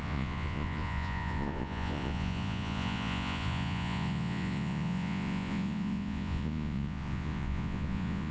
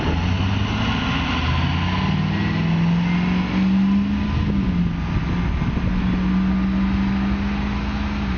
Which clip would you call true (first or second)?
second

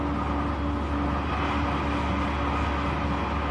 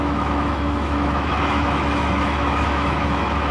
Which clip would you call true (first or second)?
first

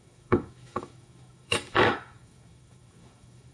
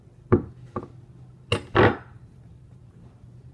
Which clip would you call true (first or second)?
second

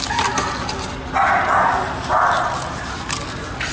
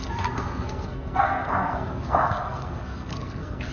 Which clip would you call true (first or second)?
first